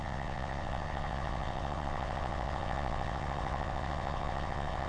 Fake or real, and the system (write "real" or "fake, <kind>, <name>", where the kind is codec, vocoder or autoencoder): fake, vocoder, WaveNeXt